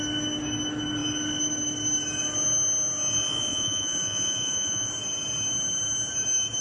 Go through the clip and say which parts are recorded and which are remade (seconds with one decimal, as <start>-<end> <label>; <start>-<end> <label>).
0.0-3.5 recorded; 3.5-4.9 remade; 4.9-6.6 recorded